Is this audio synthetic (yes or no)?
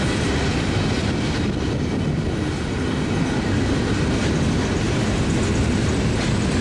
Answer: no